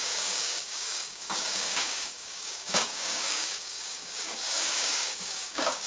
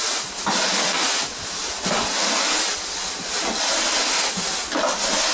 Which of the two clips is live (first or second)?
second